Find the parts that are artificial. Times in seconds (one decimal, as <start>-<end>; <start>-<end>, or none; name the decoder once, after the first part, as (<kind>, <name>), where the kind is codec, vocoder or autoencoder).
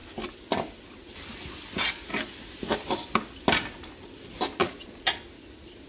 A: 4.6-5.2 (vocoder, Vocos)